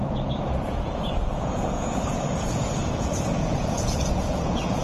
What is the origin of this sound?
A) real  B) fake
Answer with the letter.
B